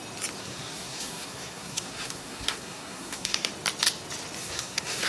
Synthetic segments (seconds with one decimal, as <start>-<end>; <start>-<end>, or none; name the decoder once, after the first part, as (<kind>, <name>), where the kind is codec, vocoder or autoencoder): 0.4-3.5 (codec, SNAC); 4.4-5.1